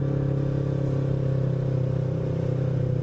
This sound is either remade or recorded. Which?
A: recorded